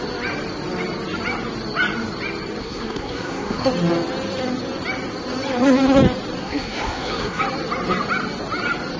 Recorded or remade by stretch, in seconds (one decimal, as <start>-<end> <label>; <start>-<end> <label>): 0.0-2.6 recorded; 2.6-3.7 remade; 3.7-6.4 recorded; 6.4-7.4 remade; 7.4-9.0 recorded